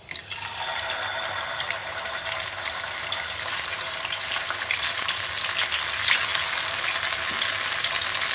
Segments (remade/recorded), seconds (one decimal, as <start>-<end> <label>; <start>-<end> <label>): 0.0-1.8 recorded; 1.8-5.2 remade; 5.2-8.3 recorded